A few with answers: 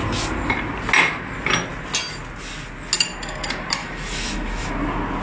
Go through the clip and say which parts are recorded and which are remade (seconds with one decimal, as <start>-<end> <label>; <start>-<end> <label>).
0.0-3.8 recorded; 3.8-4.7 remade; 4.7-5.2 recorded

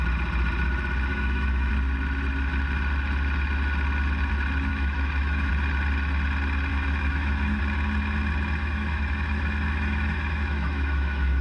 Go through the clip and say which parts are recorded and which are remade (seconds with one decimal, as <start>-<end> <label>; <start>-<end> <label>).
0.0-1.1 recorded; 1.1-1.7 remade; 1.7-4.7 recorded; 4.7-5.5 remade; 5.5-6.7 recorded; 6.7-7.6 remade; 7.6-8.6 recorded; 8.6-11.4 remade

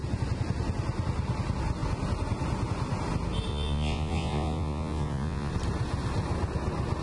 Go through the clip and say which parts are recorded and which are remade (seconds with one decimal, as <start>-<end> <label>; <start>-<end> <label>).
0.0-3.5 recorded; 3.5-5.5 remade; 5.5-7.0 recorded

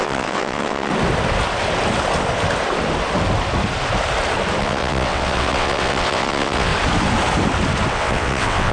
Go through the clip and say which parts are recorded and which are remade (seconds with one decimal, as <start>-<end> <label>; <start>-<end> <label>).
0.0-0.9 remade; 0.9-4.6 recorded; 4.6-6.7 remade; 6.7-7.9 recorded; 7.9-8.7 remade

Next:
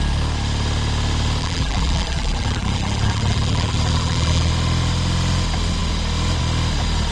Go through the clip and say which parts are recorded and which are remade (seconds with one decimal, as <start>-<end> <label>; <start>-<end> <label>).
0.0-1.4 recorded; 1.4-4.5 remade; 4.5-7.1 recorded

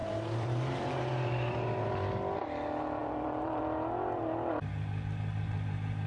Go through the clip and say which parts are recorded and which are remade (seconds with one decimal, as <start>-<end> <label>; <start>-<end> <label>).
0.0-1.9 remade; 1.9-3.0 recorded; 3.0-3.6 remade; 3.6-6.1 recorded

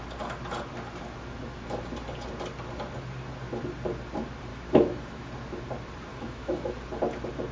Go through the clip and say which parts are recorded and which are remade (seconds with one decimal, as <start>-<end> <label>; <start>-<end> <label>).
0.0-4.5 recorded; 4.5-5.3 remade; 5.3-6.1 recorded; 6.1-6.7 remade; 6.7-7.5 recorded

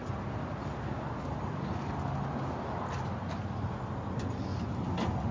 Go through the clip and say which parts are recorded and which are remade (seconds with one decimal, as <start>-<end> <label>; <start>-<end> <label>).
0.0-5.3 recorded